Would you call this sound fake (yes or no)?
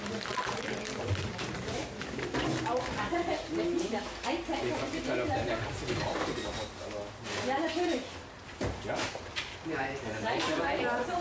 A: no